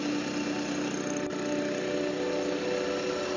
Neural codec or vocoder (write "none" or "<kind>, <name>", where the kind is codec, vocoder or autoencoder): none